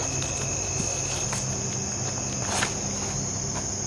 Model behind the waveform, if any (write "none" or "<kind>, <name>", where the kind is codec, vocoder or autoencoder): none